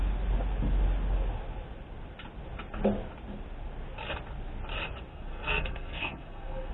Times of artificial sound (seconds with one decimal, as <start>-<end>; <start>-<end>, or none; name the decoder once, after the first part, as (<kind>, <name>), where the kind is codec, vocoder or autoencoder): 5.1-6.7 (codec, SNAC)